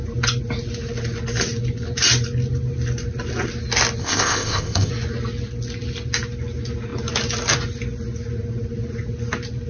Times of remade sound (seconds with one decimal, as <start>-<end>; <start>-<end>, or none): 4.0-4.9